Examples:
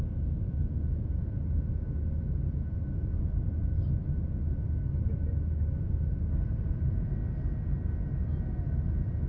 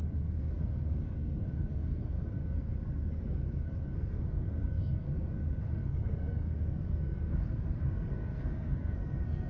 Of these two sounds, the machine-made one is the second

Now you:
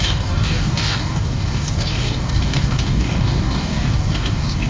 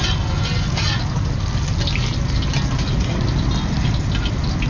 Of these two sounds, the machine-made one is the first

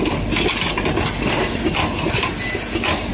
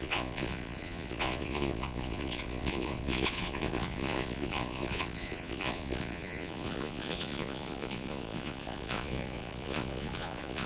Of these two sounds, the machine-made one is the second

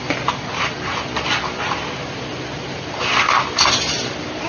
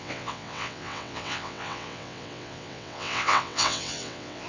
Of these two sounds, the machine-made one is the second